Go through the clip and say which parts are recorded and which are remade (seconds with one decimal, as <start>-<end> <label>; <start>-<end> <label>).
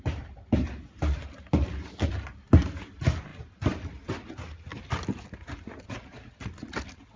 0.0-7.2 recorded